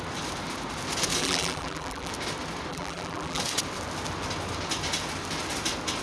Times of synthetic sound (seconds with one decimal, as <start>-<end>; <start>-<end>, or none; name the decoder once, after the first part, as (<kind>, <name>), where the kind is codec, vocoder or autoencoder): 1.2-2.1 (vocoder, BigVGAN v2); 2.7-3.4